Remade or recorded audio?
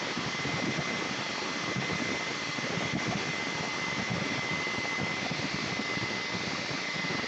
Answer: recorded